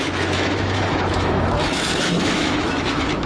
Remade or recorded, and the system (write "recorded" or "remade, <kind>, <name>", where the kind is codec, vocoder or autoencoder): remade, autoencoder, DAC-VAE